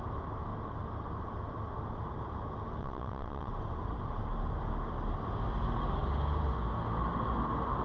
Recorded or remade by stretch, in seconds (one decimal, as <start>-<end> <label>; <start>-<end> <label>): 0.0-2.8 recorded; 2.8-3.5 remade; 3.5-7.8 recorded